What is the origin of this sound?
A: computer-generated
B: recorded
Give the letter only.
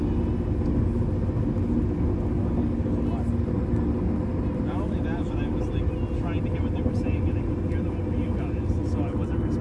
B